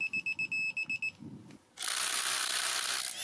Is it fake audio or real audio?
real